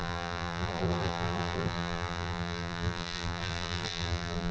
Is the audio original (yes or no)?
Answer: no